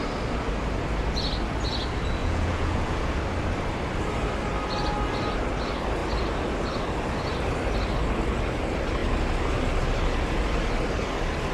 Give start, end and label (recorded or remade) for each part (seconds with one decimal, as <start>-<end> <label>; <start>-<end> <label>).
0.0-2.2 recorded; 2.2-3.2 remade; 3.2-11.5 recorded